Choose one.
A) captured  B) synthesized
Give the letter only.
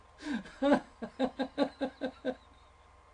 A